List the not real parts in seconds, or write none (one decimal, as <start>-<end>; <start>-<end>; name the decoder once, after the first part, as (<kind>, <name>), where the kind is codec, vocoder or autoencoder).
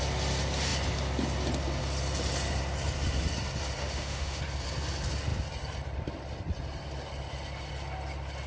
3.8-4.4 (autoencoder, DAC-VAE)